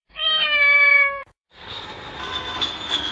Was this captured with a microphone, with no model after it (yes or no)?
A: no